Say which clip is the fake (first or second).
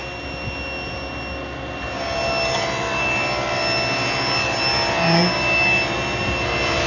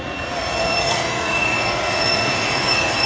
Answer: second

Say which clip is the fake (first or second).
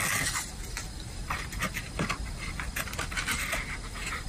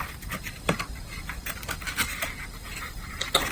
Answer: second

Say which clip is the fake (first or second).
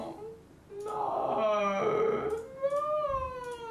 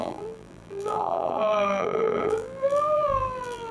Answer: second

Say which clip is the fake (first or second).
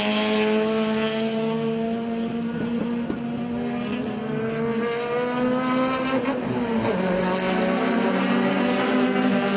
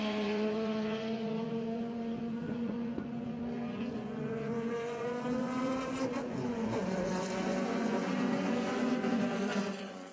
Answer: second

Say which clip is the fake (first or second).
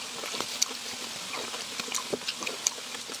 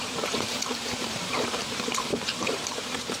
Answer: second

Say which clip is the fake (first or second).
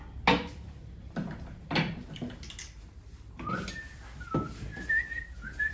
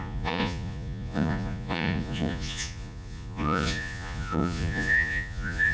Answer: second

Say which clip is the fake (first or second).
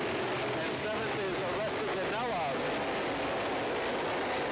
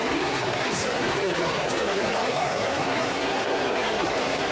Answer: second